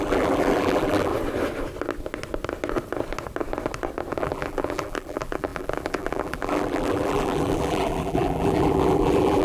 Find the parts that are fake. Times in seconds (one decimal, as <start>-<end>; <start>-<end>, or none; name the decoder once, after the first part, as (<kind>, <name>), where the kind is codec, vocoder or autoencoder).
0.0-1.1 (vocoder, BigVGAN v2); 4.2-9.4